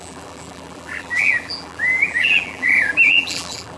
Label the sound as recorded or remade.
remade